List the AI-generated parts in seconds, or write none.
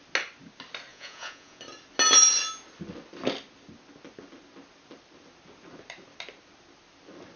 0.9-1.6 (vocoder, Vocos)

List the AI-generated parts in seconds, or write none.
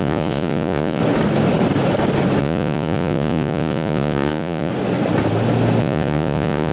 0.0-1.0 (vocoder, Vocos); 2.4-4.7; 5.8-6.7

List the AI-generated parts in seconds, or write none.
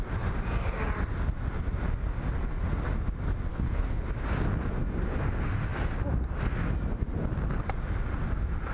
3.5-4.1 (codec, HILCodec)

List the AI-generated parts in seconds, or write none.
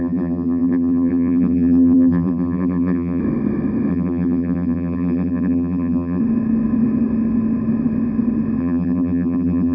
0.0-3.2 (vocoder, BigVGAN v2); 3.9-6.2; 8.6-9.7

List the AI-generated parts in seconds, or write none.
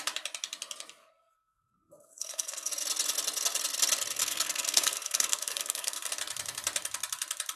1.0-2.7 (codec, SNAC); 4.2-6.1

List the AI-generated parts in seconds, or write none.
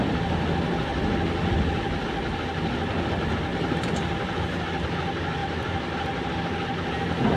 3.5-4.6 (vocoder, BigVGAN v2); 5.4-6.4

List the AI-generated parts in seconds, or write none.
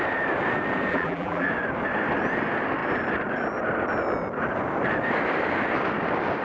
0.9-1.5 (vocoder, BigVGAN v2)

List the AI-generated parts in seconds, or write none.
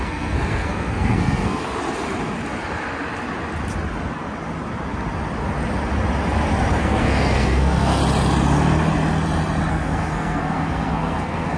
0.0-1.6 (codec, SNAC); 6.8-8.0; 9.7-11.6